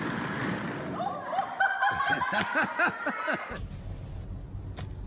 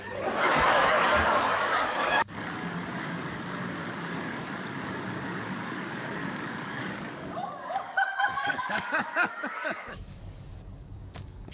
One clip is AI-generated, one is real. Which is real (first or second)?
first